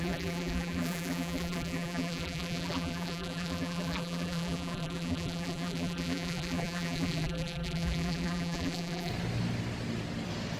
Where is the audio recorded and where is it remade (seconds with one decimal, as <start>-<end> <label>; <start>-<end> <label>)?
0.0-9.1 remade; 9.1-10.6 recorded